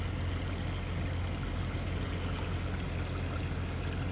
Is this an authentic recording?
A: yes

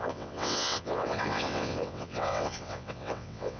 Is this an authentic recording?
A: no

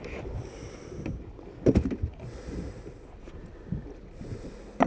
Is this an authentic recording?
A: yes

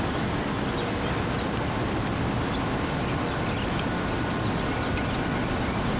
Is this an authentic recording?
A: yes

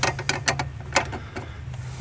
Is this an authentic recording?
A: yes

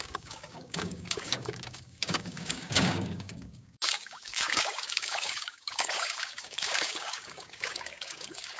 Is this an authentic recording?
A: no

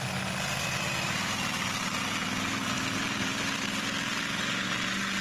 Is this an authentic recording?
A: yes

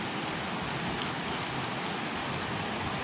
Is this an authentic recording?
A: yes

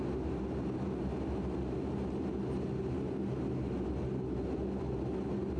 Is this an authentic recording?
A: yes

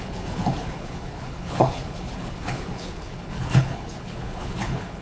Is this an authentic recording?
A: no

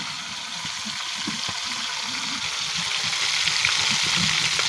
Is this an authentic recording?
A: yes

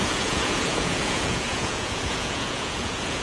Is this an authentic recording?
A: no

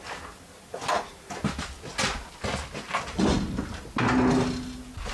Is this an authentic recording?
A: yes